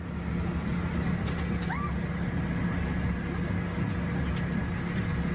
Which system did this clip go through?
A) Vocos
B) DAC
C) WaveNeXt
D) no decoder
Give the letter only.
D